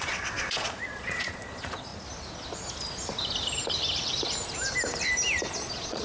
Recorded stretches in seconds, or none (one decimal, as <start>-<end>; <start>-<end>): 1.9-5.5